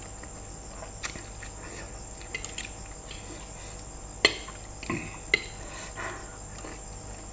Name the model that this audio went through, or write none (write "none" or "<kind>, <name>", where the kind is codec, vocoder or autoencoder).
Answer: none